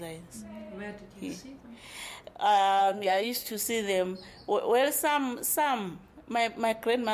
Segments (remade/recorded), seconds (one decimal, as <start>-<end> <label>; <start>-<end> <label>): 0.0-2.8 recorded; 2.8-3.6 remade; 3.6-7.1 recorded